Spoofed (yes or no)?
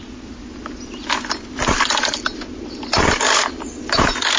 no